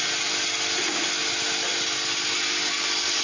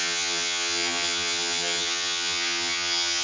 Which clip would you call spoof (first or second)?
second